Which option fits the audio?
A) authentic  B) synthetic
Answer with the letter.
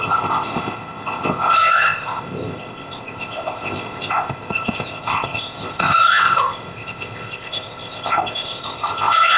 B